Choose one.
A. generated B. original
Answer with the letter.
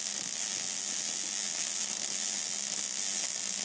B